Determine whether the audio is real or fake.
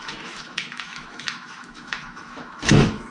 fake